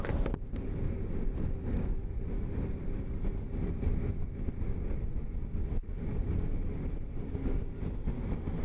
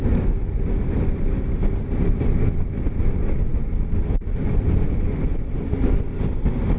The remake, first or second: second